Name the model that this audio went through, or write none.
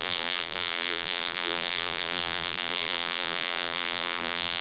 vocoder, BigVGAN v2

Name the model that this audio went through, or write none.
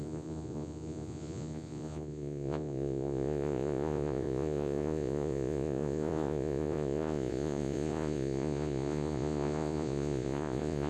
vocoder, Vocos